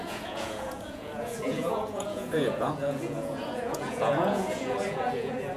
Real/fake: fake